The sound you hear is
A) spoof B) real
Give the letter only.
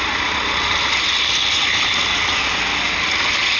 B